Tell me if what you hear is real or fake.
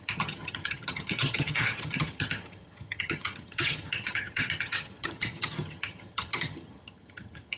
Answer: fake